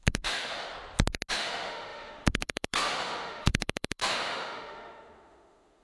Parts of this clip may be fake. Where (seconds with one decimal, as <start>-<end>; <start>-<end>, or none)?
0.0-0.7; 1.3-5.8